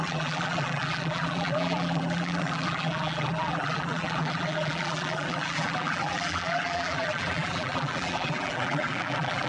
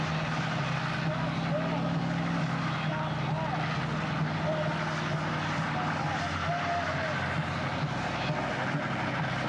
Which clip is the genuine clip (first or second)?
second